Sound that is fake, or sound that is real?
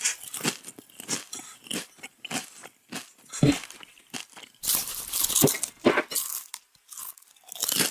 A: real